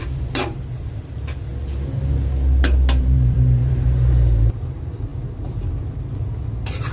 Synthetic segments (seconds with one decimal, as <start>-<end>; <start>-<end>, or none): 0.0-1.5; 3.0-6.9